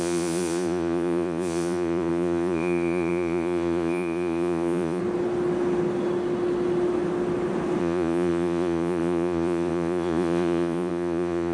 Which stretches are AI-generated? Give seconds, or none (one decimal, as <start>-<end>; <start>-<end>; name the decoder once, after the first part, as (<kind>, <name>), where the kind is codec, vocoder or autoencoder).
0.0-5.0 (vocoder, Vocos); 7.8-11.5